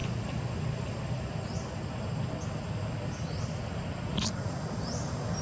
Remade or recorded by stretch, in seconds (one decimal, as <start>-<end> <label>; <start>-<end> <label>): 0.0-5.4 recorded